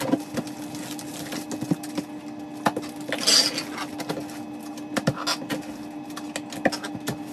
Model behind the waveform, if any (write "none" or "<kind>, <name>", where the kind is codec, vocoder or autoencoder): none